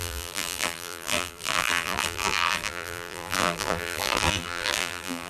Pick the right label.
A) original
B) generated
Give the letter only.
B